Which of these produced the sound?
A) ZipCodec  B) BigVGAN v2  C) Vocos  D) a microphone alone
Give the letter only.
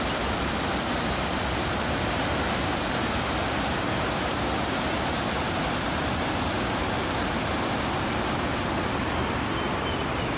D